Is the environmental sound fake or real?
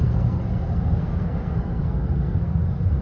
fake